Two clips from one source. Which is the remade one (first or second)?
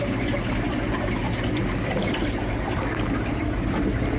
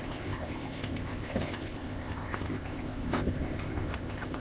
second